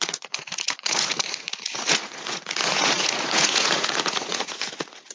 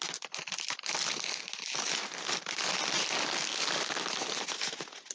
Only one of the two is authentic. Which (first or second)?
second